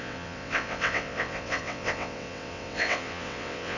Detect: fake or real fake